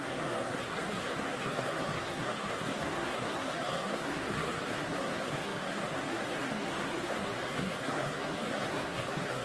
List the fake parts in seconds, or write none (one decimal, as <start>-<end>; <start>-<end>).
0.0-9.4